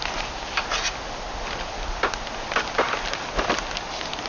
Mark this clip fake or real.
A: real